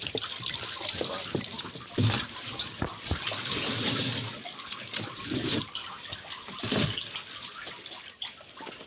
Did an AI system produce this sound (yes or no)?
no